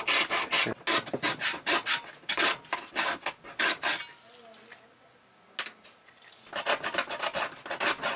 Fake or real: real